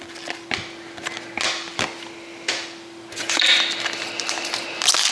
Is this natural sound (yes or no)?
yes